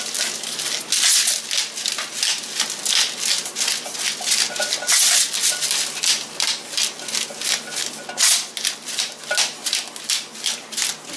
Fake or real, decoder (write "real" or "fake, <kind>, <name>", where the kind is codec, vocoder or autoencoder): real